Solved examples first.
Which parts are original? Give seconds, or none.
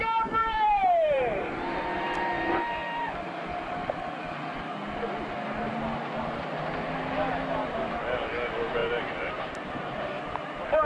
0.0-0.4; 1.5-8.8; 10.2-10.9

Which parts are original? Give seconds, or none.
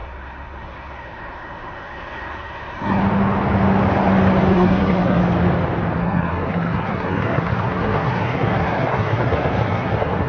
3.0-4.5; 5.2-6.0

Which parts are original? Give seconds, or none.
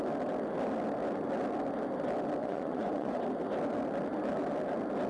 0.0-2.4; 3.2-5.1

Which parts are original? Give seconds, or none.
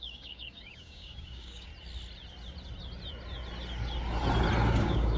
1.7-4.8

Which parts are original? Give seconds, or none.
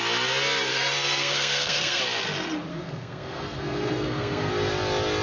0.0-0.7; 2.0-2.7; 4.5-5.2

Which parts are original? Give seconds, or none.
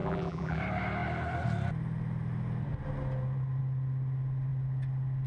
0.6-5.3